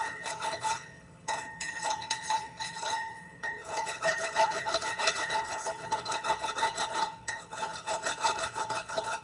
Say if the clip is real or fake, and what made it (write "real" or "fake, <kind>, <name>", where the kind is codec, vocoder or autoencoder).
fake, codec, HILCodec